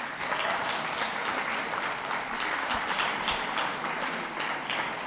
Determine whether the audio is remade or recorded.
recorded